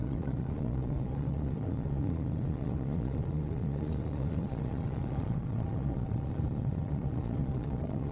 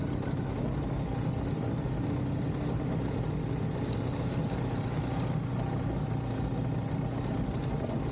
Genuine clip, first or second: second